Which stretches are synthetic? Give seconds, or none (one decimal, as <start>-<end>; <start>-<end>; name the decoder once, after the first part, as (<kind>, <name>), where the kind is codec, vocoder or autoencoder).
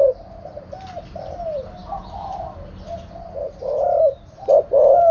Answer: none